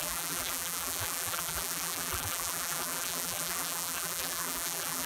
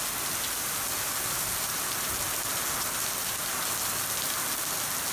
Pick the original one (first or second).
second